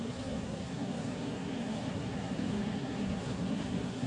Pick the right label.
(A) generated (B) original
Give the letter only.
A